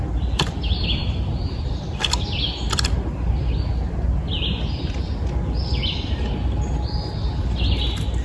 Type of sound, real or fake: real